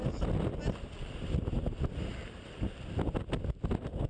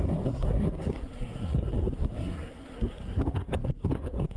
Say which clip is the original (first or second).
first